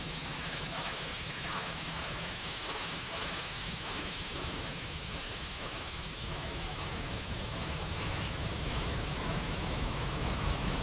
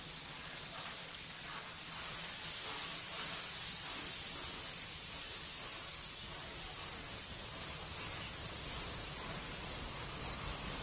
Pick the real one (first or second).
second